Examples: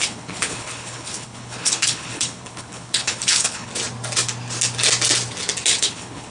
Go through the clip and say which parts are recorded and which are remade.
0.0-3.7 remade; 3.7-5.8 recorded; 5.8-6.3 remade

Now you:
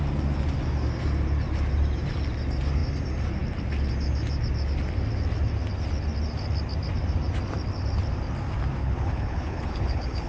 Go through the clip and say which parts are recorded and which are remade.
0.0-8.8 recorded; 8.8-10.3 remade

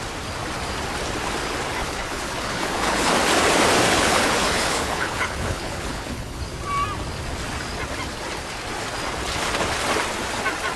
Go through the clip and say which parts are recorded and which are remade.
0.0-1.8 recorded; 1.8-3.1 remade; 3.1-3.9 recorded; 3.9-6.4 remade; 6.4-10.8 recorded

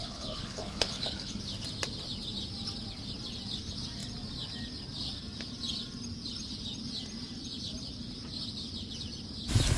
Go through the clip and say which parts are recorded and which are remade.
0.0-1.4 remade; 1.4-9.8 recorded

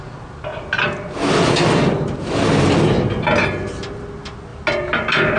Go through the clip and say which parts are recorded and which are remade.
0.0-5.4 recorded